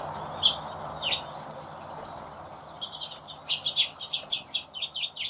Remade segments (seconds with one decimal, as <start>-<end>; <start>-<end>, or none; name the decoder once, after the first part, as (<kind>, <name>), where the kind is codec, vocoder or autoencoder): 2.5-3.1 (vocoder, BigVGAN v2)